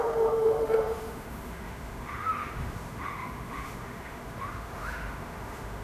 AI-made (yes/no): yes